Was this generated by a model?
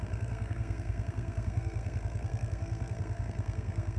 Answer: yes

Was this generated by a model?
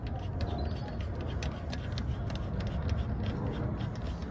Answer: no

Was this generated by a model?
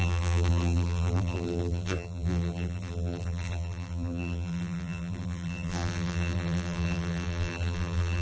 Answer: yes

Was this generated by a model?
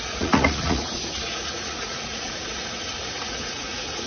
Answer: yes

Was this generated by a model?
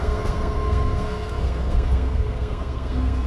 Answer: yes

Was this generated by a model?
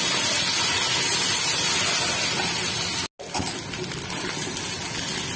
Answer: no